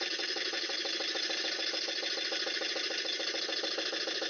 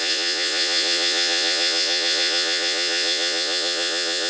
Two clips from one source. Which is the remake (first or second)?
second